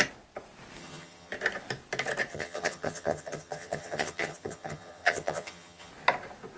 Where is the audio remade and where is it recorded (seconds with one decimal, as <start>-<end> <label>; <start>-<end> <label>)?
0.0-0.8 recorded; 0.8-1.3 remade; 1.3-2.3 recorded; 2.3-5.9 remade; 5.9-6.6 recorded